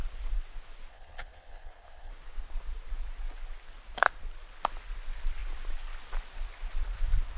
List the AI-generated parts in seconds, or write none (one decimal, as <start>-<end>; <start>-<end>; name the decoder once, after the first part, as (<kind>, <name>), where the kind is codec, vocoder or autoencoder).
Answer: 0.9-2.1 (codec, HILCodec)